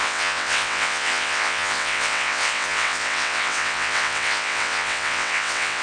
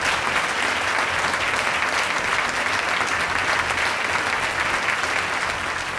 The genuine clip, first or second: second